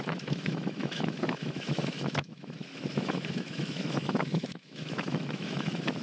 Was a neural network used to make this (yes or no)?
yes